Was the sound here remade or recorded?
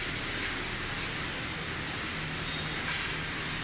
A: recorded